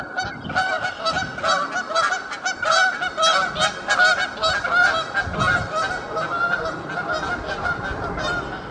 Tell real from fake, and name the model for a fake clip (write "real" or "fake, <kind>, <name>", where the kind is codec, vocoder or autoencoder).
real